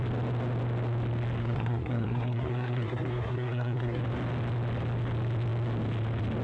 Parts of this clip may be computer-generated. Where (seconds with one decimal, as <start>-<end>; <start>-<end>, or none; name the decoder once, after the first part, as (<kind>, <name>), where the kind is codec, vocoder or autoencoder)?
1.4-4.0 (codec, SNAC)

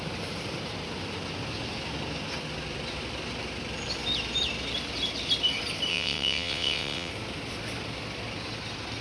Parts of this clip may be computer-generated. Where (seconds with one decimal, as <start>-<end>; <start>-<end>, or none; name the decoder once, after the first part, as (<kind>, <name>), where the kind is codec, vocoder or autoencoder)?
5.9-7.1 (vocoder, WaveNeXt)

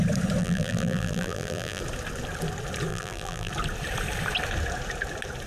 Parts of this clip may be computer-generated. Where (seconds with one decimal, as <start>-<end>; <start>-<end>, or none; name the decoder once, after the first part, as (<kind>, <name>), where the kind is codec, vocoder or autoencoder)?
0.4-1.8 (vocoder, BigVGAN v2); 2.9-3.5